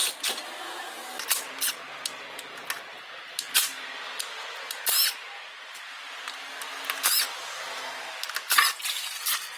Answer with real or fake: real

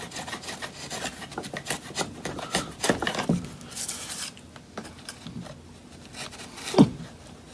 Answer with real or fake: real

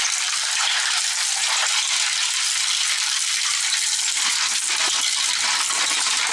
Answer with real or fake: real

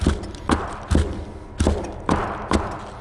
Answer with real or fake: real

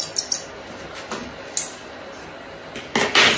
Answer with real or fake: real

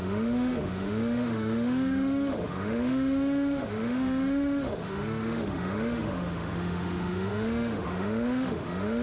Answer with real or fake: fake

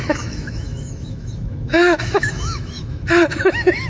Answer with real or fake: fake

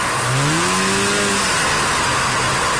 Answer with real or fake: real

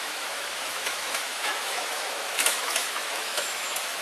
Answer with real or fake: fake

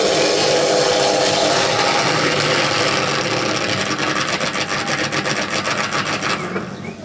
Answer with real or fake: real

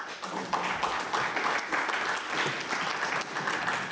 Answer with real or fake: real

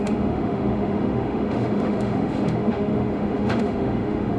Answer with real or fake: fake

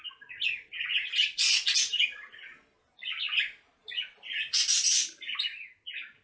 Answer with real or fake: real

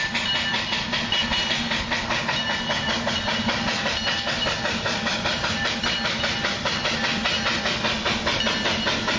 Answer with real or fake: real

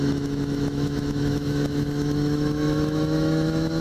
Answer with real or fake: fake